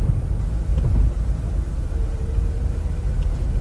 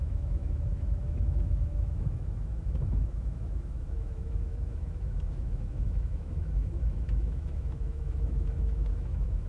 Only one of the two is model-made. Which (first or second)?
second